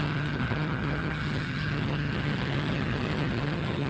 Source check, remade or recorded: remade